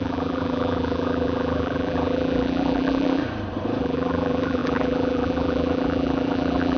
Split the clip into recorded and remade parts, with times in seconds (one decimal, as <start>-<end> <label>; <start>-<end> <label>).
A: 0.0-3.2 remade; 3.2-3.8 recorded; 3.8-6.8 remade